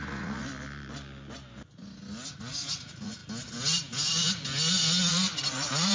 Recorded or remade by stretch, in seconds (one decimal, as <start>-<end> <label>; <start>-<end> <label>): 0.0-0.5 remade; 0.5-2.3 recorded; 2.3-3.2 remade; 3.2-5.1 recorded; 5.1-5.9 remade